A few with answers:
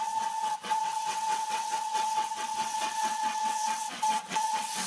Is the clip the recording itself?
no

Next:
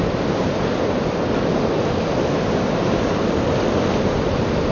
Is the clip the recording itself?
yes